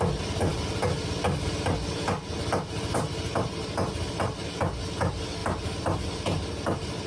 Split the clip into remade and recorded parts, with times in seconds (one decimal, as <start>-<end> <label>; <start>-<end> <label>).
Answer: 0.0-5.4 recorded; 5.4-7.1 remade